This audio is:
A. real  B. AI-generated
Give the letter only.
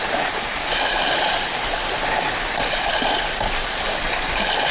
A